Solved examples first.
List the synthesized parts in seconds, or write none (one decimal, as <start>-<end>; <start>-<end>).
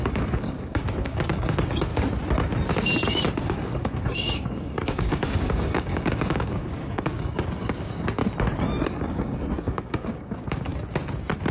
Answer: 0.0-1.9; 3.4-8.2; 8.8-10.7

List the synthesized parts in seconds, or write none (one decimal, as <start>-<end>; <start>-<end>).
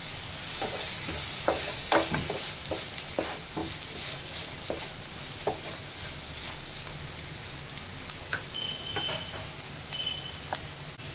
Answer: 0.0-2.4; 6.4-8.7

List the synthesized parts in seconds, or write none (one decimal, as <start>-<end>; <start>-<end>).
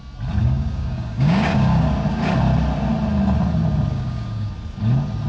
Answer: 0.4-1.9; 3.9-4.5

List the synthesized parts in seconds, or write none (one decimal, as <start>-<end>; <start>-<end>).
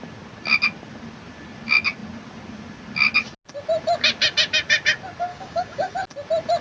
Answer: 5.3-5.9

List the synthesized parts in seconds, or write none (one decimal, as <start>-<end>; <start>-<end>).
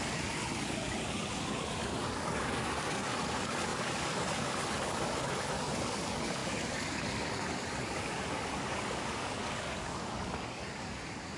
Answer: 0.0-11.4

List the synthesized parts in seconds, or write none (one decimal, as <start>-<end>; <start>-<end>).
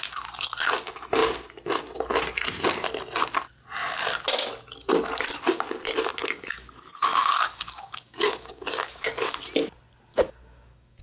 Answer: 6.2-9.4; 10.1-11.0